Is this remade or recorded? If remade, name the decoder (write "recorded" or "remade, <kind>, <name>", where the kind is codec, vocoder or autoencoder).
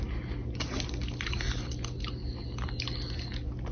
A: recorded